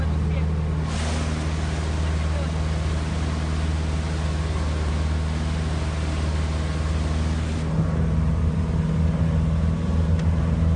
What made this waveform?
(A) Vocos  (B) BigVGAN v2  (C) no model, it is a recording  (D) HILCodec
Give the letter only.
C